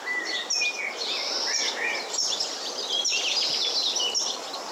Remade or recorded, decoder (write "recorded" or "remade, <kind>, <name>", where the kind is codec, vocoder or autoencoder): recorded